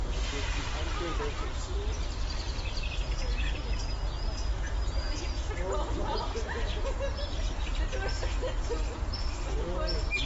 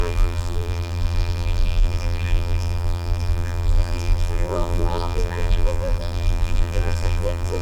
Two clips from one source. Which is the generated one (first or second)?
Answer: second